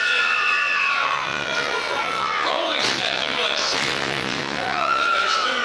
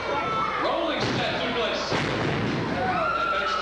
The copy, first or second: first